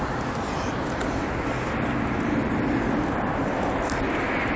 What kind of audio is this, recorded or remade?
recorded